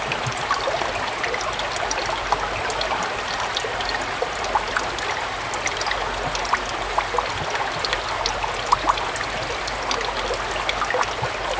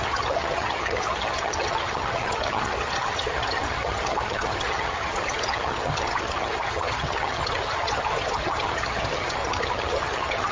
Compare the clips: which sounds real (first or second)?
first